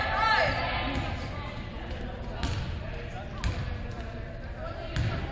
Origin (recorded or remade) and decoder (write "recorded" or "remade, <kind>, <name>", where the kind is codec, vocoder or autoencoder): recorded